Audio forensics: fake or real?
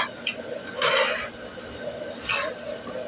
real